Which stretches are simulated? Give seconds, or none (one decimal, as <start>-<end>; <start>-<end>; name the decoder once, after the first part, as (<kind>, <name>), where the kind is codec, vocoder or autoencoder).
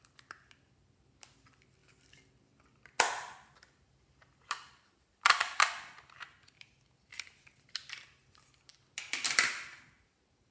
none